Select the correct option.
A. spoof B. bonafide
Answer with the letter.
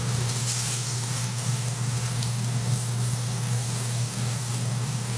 A